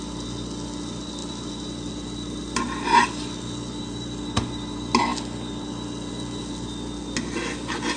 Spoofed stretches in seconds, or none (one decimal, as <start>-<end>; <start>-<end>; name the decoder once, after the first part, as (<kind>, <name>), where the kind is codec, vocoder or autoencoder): none